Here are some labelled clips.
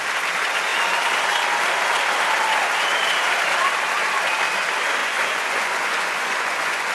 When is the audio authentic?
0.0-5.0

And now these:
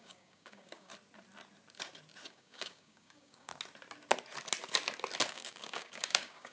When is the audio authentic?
0.9-2.3; 3.5-5.3

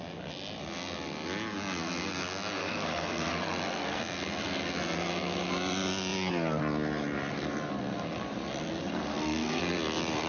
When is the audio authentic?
0.0-2.6; 4.0-8.8; 9.6-10.3

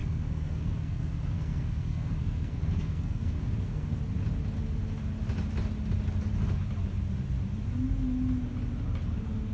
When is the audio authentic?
4.0-9.5

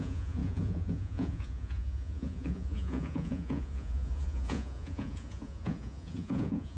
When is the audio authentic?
none